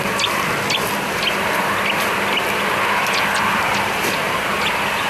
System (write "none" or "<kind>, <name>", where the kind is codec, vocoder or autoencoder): none